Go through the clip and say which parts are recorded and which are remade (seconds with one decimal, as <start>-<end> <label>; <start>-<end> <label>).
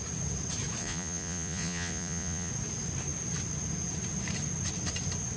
0.0-0.8 recorded; 0.8-2.5 remade; 2.5-5.4 recorded